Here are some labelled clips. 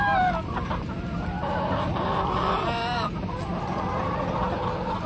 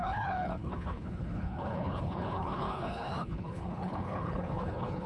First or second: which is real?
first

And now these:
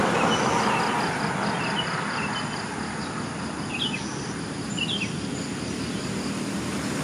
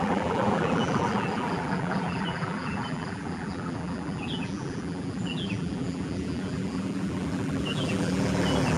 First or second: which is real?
first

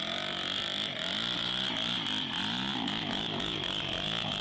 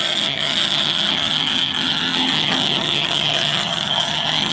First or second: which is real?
first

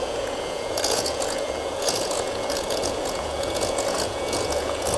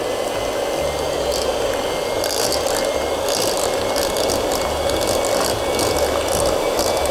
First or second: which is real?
second